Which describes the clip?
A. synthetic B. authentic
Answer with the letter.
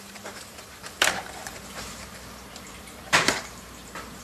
A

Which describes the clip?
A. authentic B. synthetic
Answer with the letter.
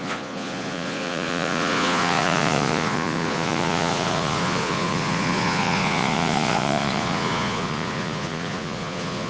B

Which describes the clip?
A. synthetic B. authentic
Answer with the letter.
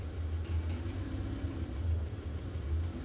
B